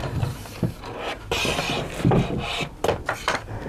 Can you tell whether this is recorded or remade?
recorded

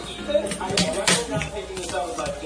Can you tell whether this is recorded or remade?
recorded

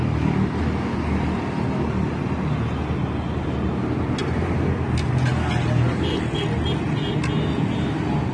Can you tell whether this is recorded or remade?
recorded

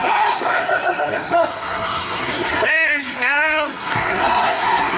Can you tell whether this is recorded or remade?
remade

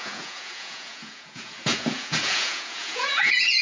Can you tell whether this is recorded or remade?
remade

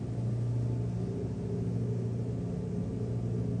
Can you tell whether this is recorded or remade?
recorded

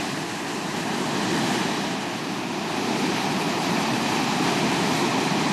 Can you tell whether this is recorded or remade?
remade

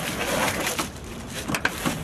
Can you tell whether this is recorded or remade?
recorded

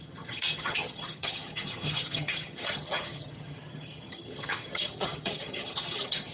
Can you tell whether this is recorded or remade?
remade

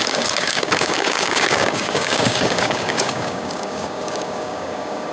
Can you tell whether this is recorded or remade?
remade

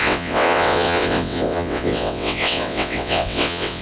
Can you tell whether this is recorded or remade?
remade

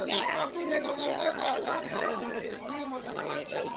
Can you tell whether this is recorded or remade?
remade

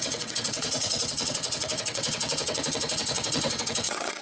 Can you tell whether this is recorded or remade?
remade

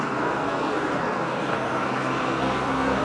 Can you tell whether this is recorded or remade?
remade